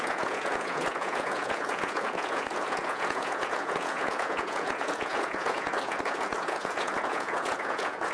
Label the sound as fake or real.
fake